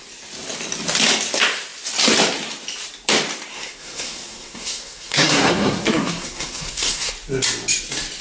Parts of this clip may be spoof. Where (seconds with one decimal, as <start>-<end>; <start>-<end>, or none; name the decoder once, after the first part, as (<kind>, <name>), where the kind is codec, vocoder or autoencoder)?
3.5-7.1 (codec, SNAC)